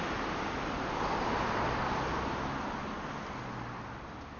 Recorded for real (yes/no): yes